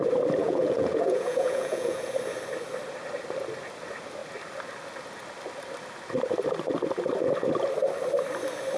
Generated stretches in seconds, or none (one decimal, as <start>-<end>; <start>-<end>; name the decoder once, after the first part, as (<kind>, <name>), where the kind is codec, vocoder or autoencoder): 0.4-2.1 (vocoder, Vocos)